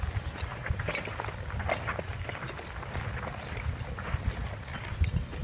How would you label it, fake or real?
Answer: real